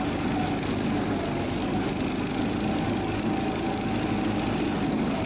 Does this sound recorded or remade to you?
recorded